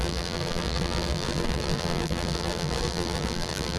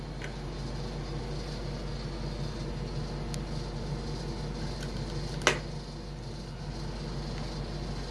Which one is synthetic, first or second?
first